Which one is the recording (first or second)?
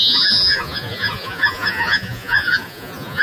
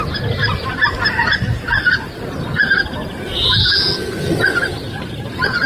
second